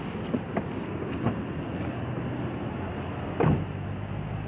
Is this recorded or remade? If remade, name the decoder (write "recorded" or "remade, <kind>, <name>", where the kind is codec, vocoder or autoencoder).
recorded